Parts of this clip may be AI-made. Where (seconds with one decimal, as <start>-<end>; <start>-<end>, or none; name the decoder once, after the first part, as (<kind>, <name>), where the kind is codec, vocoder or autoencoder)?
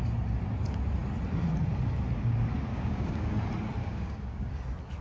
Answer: 2.7-3.3 (codec, DAC); 3.8-4.5